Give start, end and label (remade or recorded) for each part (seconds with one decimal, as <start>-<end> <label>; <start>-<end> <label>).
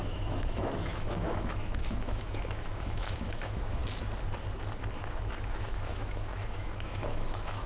0.0-3.8 remade; 3.8-4.9 recorded; 4.9-7.7 remade